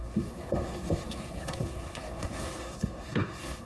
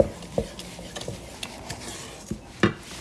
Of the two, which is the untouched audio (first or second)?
second